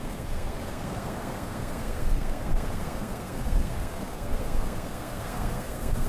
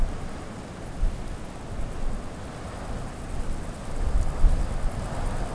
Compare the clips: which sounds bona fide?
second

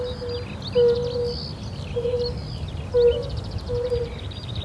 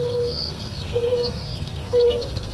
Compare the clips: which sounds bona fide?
first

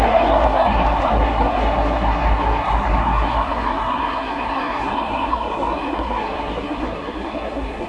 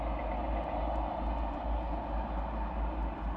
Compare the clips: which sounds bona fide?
second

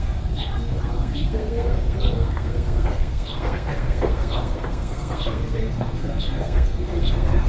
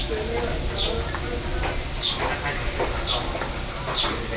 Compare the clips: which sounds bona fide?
second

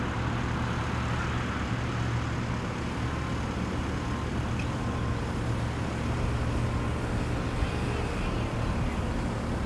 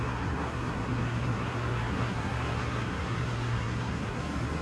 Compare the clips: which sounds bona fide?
first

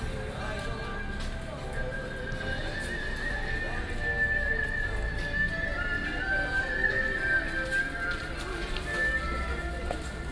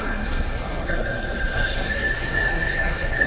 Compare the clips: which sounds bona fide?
first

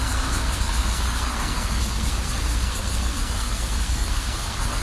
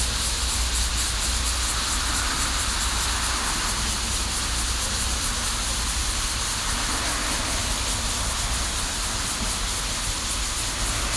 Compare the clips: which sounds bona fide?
second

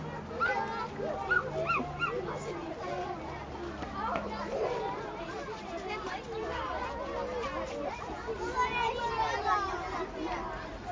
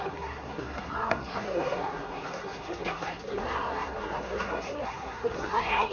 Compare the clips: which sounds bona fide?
first